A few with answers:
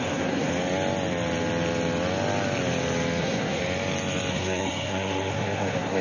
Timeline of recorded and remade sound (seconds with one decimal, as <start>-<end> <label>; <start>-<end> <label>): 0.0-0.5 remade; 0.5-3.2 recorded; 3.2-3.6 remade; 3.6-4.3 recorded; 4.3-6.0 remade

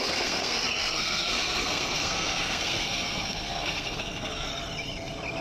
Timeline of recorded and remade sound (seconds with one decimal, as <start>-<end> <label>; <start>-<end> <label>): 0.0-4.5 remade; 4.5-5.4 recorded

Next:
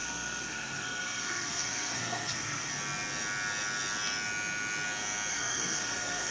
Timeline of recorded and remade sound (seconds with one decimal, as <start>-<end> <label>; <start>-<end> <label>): 0.0-2.7 remade; 2.7-5.3 recorded; 5.3-6.3 remade

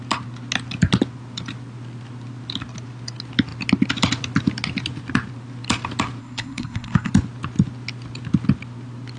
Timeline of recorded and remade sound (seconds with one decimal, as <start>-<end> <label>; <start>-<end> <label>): 0.0-6.2 recorded; 6.2-7.1 remade; 7.1-9.2 recorded